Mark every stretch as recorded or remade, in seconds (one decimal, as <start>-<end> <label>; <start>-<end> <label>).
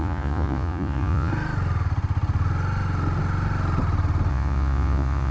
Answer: 0.0-1.3 remade; 1.3-4.3 recorded; 4.3-5.3 remade